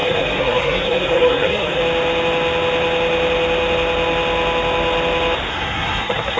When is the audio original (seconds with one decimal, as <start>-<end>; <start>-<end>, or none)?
1.8-5.5